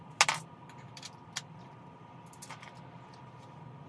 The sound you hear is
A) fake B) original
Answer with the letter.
B